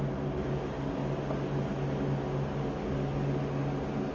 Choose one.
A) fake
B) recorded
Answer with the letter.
B